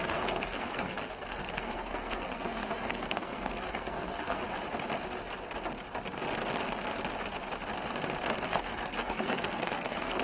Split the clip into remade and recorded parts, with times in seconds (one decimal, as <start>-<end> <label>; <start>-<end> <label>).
0.0-4.4 remade; 4.4-8.5 recorded; 8.5-10.2 remade